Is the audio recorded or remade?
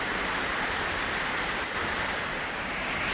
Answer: recorded